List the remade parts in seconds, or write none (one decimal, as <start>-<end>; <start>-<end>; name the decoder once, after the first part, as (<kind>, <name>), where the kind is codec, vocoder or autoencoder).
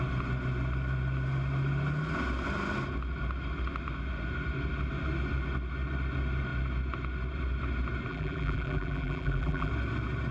8.1-9.7 (vocoder, BigVGAN v2)